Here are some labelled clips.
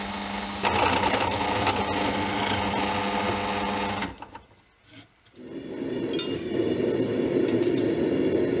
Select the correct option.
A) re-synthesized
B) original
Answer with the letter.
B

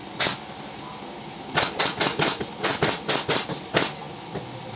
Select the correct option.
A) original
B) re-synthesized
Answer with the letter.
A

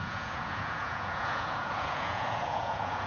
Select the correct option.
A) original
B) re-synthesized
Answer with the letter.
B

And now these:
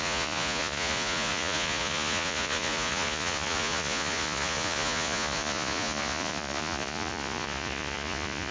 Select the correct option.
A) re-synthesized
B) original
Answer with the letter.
A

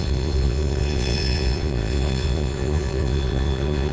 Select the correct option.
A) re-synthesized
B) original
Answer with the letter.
A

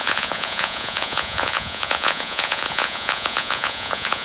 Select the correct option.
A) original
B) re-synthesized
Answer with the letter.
B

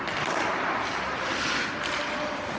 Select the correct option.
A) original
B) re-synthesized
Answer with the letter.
A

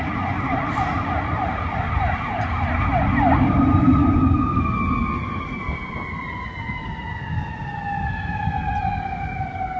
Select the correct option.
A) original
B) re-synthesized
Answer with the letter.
A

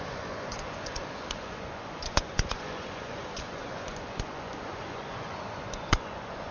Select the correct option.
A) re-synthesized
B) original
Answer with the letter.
A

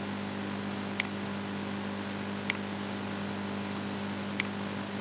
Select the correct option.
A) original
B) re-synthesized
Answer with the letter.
A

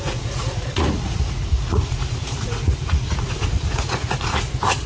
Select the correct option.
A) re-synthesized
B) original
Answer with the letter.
A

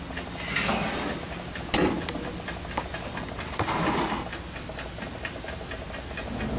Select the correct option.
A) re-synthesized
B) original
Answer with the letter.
B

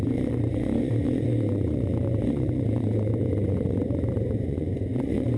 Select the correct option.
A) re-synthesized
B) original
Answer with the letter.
A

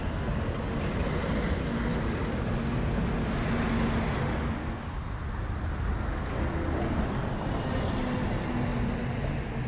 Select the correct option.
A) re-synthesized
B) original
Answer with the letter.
B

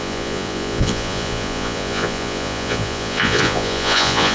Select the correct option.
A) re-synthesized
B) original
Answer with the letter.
A